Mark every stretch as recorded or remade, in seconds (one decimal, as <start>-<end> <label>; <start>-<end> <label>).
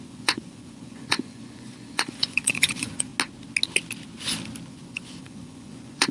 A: 0.0-3.1 remade; 3.1-4.7 recorded; 4.7-6.1 remade